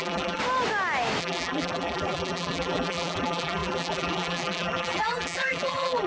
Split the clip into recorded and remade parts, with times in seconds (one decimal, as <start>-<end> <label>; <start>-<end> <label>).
0.0-0.4 remade; 0.4-1.2 recorded; 1.2-6.1 remade